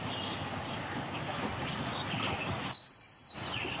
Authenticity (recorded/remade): recorded